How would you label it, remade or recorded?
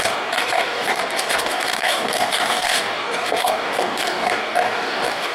remade